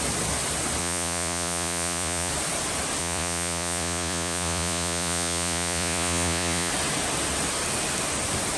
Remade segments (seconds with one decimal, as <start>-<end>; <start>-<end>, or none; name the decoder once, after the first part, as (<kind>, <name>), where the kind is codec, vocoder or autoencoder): 0.8-2.3 (vocoder, Vocos); 3.0-6.7